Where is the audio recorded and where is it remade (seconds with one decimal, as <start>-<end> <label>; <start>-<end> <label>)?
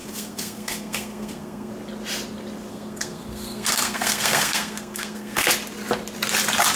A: 0.0-1.7 remade; 1.7-2.7 recorded; 2.7-5.5 remade; 5.5-6.8 recorded